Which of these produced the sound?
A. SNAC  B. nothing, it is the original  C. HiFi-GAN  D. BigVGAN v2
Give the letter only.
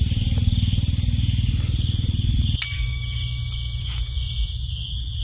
B